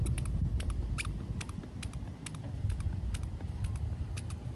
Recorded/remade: recorded